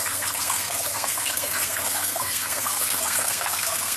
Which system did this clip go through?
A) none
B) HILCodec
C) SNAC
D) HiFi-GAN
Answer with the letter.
C